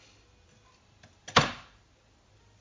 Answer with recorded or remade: recorded